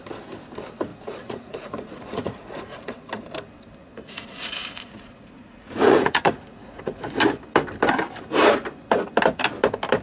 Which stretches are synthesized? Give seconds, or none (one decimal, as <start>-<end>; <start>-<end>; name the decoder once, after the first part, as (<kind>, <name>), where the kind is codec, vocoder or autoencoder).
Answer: 0.9-3.1 (vocoder, Vocos); 3.8-7.0